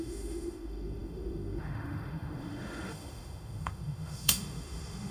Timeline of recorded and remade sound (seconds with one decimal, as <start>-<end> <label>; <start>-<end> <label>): 0.0-5.1 remade